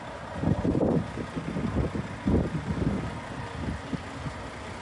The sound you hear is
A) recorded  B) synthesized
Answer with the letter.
A